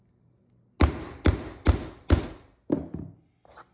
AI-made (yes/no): no